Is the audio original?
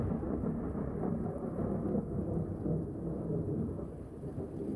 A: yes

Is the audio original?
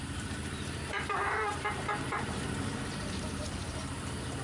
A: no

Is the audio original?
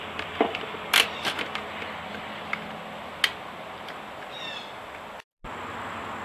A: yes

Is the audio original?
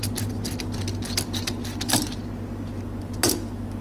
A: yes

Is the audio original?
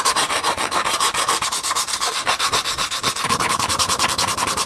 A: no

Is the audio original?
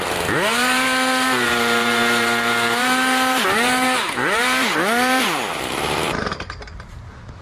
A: no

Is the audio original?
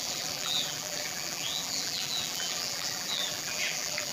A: no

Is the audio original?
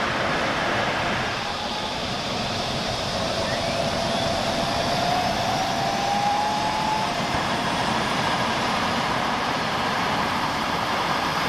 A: no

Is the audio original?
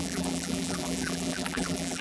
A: no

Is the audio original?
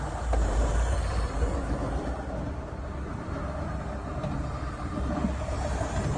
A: no